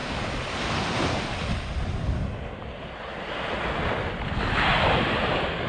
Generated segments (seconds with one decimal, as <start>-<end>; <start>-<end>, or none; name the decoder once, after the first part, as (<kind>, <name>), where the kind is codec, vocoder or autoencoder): none